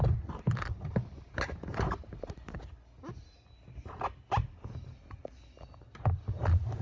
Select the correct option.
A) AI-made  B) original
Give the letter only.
B